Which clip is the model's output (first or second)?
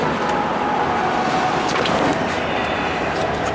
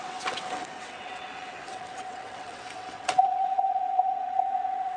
second